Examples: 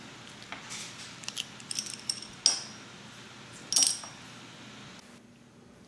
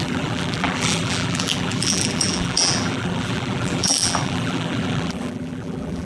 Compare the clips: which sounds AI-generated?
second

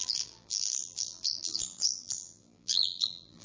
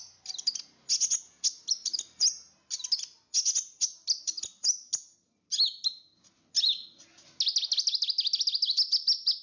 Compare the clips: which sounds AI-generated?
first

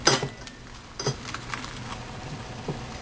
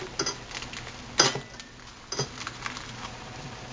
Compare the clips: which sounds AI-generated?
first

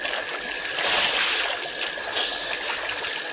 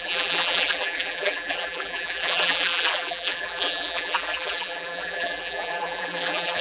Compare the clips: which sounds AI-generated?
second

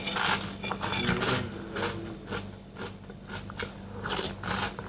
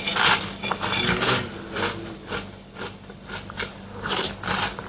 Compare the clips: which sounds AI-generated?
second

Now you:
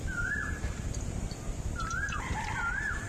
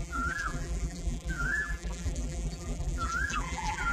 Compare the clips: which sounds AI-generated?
second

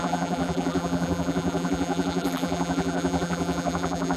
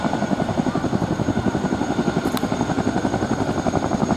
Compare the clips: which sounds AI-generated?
first